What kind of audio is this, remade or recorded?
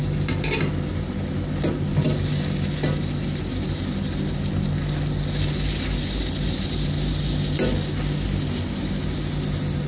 recorded